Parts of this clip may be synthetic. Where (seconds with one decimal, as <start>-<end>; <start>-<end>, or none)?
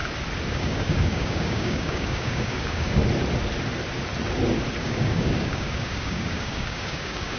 0.5-3.0; 4.8-7.4